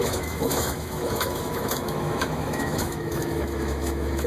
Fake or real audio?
fake